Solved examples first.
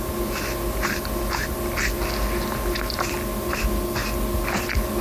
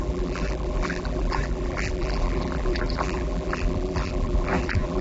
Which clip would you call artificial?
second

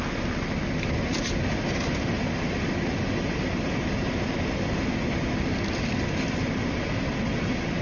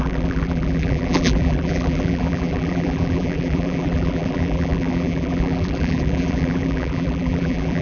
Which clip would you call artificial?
second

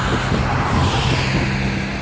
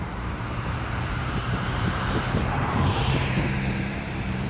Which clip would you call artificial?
second